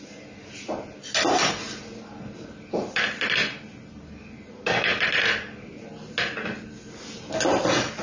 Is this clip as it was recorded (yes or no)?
yes